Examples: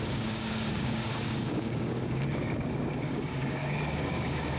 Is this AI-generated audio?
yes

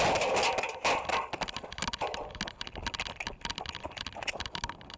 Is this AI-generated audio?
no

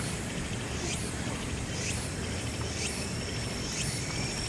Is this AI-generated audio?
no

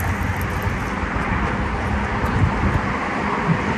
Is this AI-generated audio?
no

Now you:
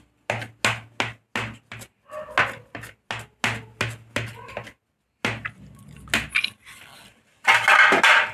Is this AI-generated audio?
no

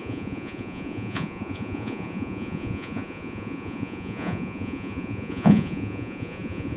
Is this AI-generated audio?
yes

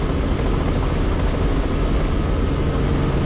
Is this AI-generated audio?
no